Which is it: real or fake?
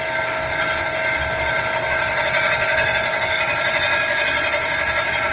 real